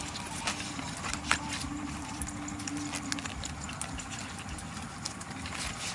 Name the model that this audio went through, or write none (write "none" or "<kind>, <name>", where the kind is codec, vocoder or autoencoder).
none